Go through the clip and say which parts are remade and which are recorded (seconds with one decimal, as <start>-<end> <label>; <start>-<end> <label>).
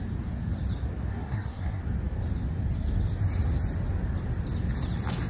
0.0-1.1 recorded; 1.1-1.8 remade; 1.8-5.3 recorded